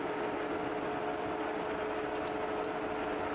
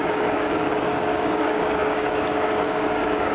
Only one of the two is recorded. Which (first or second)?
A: first